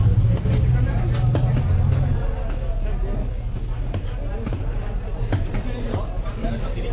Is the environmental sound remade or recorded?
recorded